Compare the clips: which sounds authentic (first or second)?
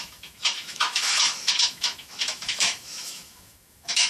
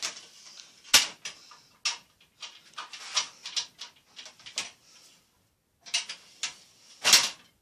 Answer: second